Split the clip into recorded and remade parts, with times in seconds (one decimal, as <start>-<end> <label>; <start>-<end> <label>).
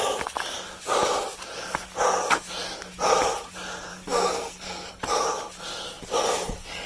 0.0-3.9 recorded; 3.9-4.9 remade; 4.9-6.9 recorded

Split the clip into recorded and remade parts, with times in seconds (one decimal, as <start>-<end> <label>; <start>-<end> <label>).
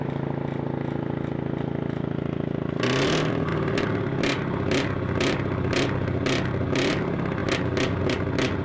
0.0-8.6 recorded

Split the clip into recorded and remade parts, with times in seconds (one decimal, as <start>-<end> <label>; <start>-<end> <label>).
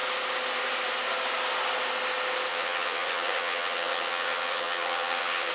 0.0-2.5 recorded; 2.5-5.5 remade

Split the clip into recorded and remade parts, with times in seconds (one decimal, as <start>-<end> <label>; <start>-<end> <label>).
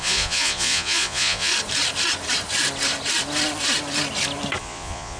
0.0-1.5 remade; 1.5-4.6 recorded; 4.6-5.2 remade